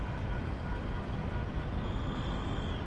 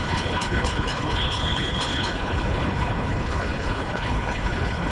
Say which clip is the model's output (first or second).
second